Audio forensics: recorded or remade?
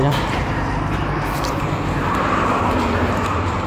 recorded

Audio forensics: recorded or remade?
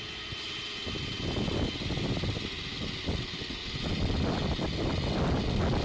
recorded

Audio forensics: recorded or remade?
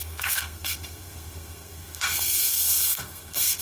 remade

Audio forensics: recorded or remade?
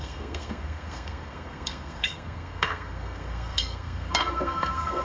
remade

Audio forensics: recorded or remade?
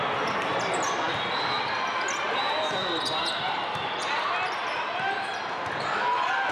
recorded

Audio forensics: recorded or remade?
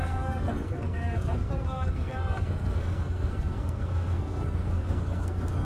remade